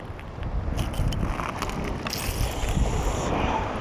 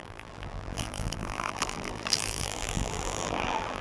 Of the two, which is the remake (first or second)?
second